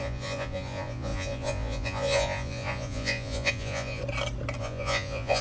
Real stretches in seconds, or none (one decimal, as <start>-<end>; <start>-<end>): 4.0-4.6